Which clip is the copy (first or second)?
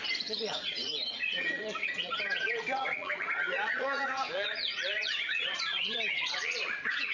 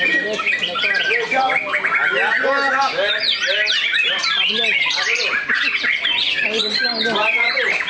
first